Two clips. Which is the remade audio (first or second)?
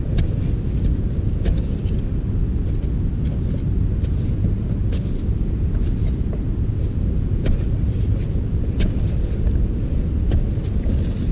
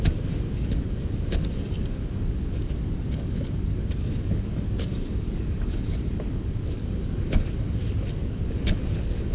second